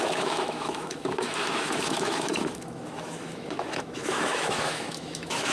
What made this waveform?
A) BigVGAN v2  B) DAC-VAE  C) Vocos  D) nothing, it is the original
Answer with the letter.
B